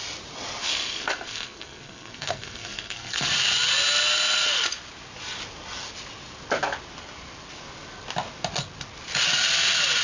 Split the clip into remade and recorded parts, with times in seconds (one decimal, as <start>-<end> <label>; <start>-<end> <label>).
0.0-0.6 recorded; 0.6-3.3 remade; 3.3-10.0 recorded